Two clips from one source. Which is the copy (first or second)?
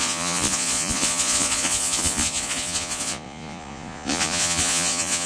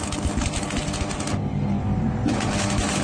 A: first